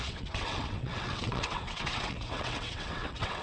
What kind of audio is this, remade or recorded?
remade